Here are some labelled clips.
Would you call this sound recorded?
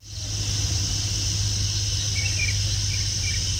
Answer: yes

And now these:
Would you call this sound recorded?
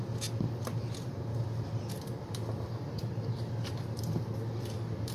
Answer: no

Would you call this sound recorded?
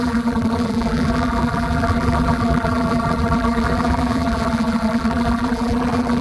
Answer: no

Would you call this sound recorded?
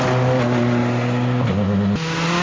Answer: yes